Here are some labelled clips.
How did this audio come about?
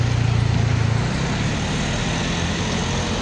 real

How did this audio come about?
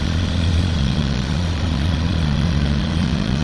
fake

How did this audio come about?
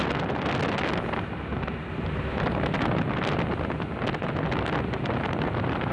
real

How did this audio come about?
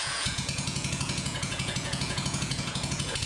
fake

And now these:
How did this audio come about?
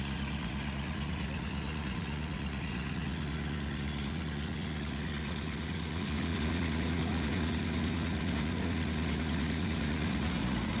fake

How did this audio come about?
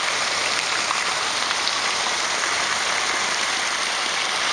real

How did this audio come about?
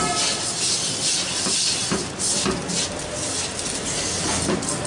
real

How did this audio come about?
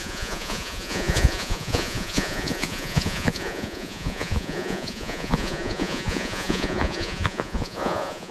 fake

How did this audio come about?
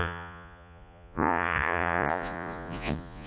fake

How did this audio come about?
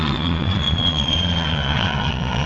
fake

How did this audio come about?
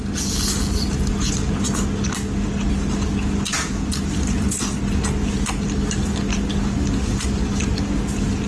real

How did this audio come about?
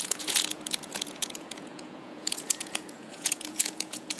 fake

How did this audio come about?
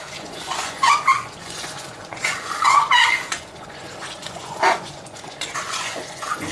fake